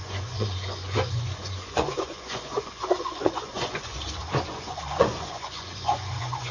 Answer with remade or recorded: remade